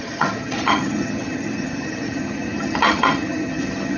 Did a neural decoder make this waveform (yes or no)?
yes